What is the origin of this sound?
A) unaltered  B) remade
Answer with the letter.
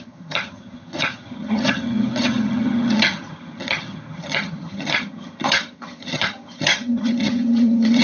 B